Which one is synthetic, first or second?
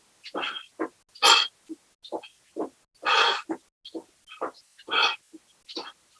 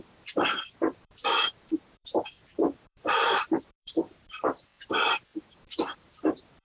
second